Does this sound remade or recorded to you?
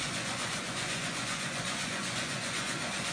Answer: remade